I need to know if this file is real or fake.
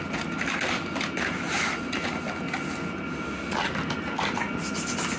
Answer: real